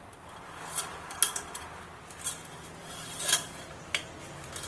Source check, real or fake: real